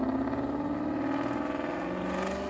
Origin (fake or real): real